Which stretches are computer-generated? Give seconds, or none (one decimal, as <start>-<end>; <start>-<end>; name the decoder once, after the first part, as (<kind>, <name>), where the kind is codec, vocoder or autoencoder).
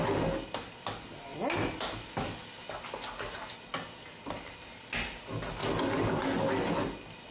none